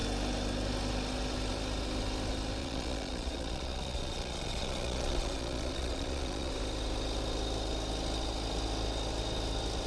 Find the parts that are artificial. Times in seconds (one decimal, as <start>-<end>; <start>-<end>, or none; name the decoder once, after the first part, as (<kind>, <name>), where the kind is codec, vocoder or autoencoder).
2.6-6.5 (vocoder, Vocos)